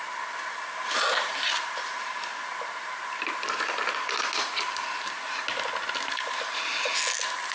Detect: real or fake real